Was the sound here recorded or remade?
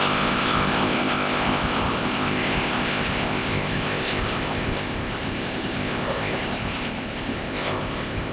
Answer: remade